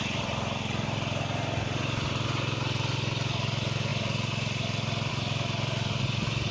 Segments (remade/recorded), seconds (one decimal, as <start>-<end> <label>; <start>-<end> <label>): 0.0-6.5 recorded